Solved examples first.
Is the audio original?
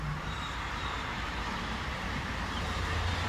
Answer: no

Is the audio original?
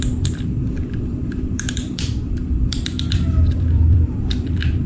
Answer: no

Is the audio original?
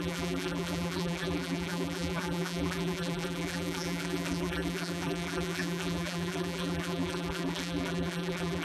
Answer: no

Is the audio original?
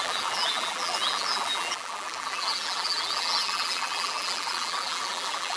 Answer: no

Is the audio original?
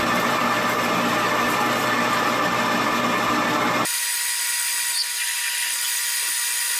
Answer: yes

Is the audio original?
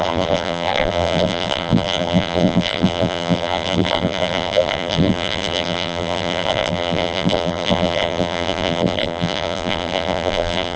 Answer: no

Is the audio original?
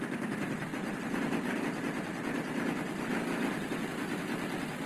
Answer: yes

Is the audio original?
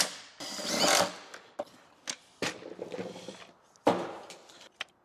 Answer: yes